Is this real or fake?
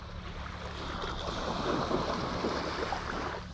real